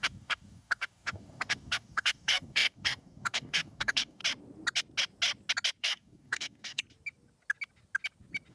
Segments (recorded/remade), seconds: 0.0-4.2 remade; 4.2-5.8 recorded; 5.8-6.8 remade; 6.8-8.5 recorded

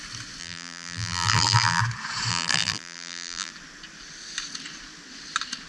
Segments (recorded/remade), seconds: 0.0-0.4 recorded; 0.4-1.8 remade; 1.8-2.3 recorded; 2.3-3.5 remade; 3.5-5.7 recorded

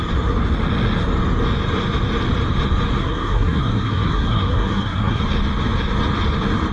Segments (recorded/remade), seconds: 0.0-3.0 recorded; 3.0-5.2 remade; 5.2-6.7 recorded

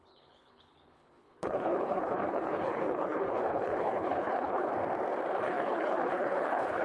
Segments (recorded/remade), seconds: 0.0-4.7 remade; 4.7-5.4 recorded; 5.4-6.8 remade

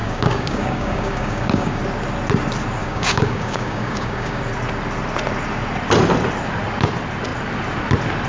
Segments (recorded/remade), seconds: 0.0-1.8 remade; 1.8-2.8 recorded; 2.8-4.4 remade; 4.4-8.3 recorded

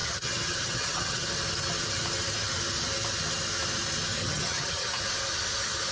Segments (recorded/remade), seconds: 0.0-1.3 remade; 1.3-4.2 recorded; 4.2-5.0 remade; 5.0-5.9 recorded